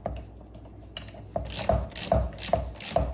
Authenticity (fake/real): real